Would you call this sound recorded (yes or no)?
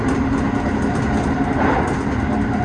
yes